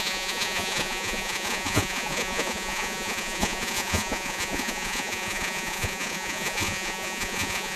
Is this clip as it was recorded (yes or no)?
no